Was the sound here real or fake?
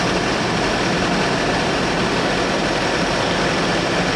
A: real